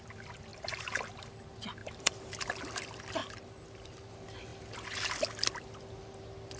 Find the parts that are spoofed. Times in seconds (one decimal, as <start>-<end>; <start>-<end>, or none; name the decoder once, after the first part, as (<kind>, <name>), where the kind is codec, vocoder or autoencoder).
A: 0.5-1.3 (vocoder, BigVGAN v2); 1.8-2.3